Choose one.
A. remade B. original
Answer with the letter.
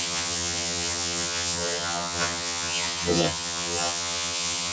A